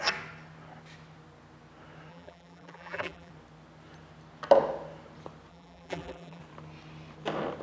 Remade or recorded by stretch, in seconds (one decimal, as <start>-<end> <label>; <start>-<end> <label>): 0.0-2.1 recorded; 2.1-3.3 remade; 3.3-5.5 recorded; 5.5-6.4 remade; 6.4-7.6 recorded